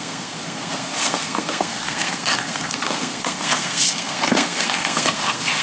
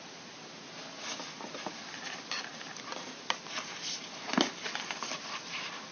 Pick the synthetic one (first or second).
first